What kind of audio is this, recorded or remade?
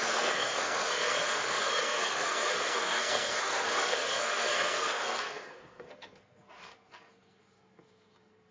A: remade